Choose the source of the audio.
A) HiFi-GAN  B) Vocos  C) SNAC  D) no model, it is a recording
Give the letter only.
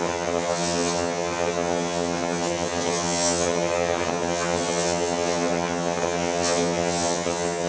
A